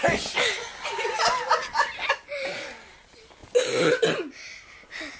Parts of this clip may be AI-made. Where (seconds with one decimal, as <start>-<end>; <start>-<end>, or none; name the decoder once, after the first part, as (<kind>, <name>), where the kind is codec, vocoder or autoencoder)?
none